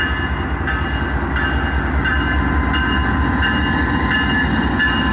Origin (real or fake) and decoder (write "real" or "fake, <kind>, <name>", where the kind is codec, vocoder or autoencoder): real